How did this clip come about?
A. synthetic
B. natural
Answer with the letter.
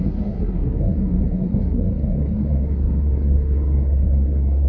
A